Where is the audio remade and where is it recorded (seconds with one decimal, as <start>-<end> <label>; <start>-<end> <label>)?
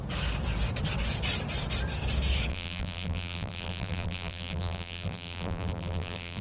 0.0-2.5 recorded; 2.5-6.4 remade